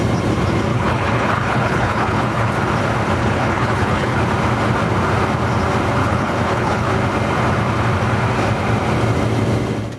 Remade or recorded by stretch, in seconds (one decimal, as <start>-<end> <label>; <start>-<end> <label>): 0.0-0.7 recorded; 0.7-2.5 remade; 2.5-3.2 recorded; 3.2-4.2 remade; 4.2-6.0 recorded; 6.0-6.9 remade; 6.9-10.0 recorded